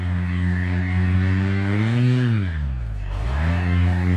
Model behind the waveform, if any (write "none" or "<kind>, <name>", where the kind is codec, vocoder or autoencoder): codec, DAC